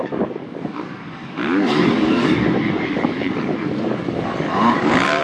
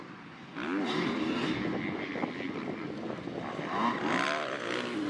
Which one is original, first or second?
second